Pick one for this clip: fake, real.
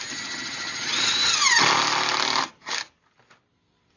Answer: real